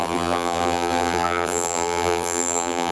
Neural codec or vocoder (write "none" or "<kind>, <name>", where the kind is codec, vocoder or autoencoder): vocoder, BigVGAN v2